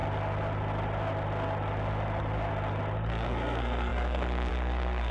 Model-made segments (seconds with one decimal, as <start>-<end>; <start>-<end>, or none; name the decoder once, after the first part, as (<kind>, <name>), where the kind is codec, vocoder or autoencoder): 3.1-5.1 (codec, SNAC)